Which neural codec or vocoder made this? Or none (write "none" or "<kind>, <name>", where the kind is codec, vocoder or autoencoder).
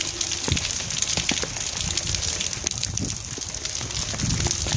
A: none